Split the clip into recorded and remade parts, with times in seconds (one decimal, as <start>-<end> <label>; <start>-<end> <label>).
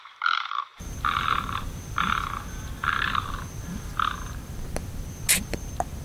0.0-6.0 recorded